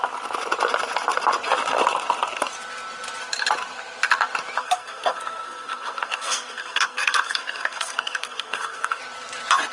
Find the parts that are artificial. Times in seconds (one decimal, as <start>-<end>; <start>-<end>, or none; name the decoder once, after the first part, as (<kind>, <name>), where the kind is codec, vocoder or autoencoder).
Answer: 4.6-9.0 (codec, SNAC)